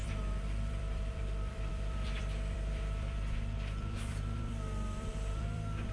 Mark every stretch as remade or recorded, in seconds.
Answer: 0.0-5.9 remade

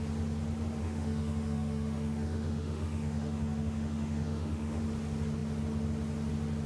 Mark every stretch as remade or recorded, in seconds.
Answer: 0.0-0.8 recorded; 0.8-4.8 remade; 4.8-6.7 recorded

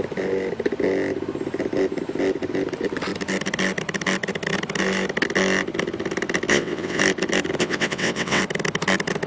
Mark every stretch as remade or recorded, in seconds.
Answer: 0.0-6.5 recorded; 6.5-7.0 remade; 7.0-7.6 recorded; 7.6-8.4 remade; 8.4-9.3 recorded